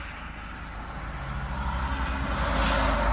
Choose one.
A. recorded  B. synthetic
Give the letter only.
A